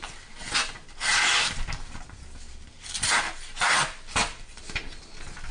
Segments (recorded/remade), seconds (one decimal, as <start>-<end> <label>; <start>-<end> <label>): 0.0-5.5 recorded